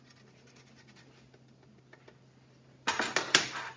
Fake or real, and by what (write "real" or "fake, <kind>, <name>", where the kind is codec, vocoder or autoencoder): real